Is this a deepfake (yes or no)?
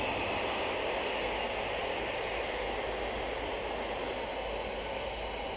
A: no